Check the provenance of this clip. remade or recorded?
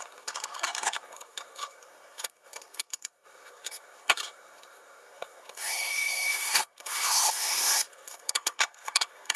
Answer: remade